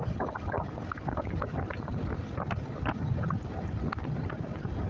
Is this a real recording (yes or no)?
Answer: yes